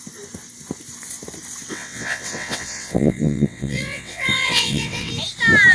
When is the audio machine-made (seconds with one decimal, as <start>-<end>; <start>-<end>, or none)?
1.7-5.1